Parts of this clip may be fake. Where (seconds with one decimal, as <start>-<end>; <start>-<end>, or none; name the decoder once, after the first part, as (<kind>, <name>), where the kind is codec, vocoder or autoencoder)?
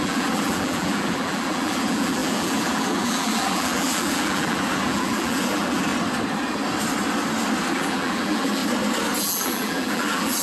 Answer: 0.0-5.9 (vocoder, BigVGAN v2); 7.7-8.6; 9.2-10.4